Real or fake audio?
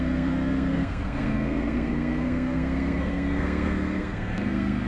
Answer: fake